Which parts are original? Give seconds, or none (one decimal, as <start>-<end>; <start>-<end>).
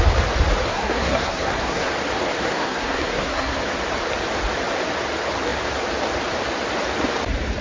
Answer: 0.0-0.7; 1.9-2.5; 3.6-7.6